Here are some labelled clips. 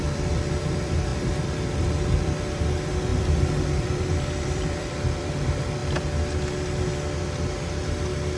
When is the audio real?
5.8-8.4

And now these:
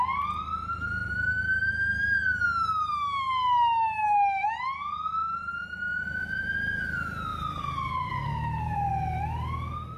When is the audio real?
0.0-7.3; 8.9-10.0

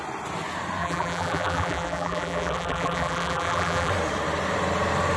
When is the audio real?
0.0-0.8; 3.9-5.2

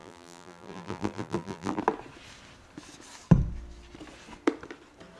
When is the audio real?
1.8-5.2

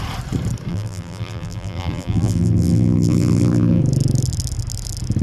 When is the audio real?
0.0-0.7; 3.8-5.2

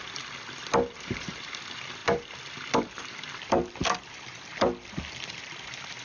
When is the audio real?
2.0-2.6